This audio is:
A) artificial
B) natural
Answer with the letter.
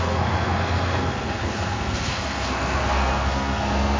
A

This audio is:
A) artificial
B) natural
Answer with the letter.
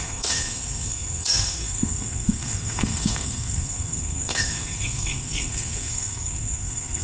A